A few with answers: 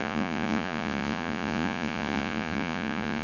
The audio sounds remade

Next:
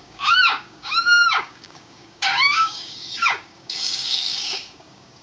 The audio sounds remade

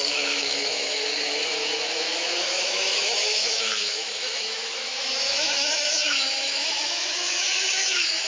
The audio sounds remade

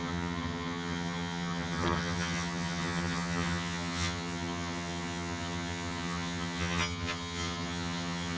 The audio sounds remade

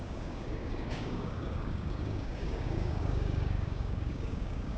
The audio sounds remade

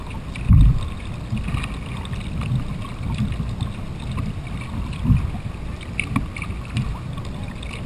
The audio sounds recorded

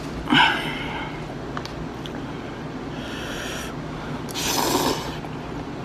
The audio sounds recorded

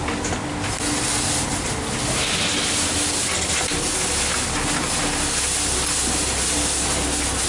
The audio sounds recorded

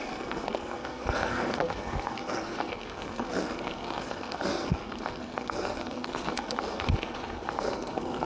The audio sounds remade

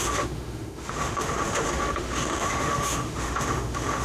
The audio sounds remade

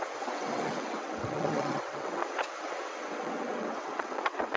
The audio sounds remade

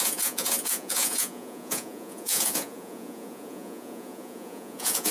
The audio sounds remade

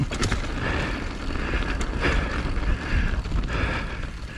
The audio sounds recorded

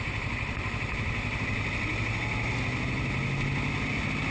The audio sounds recorded